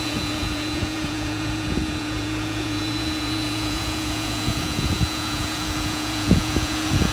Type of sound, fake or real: fake